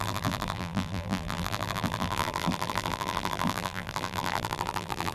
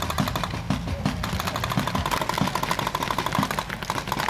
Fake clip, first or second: first